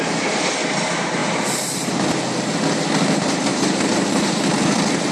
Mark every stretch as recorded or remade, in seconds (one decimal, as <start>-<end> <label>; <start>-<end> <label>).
0.0-1.2 recorded; 1.2-2.2 remade; 2.2-3.5 recorded; 3.5-4.3 remade; 4.3-5.1 recorded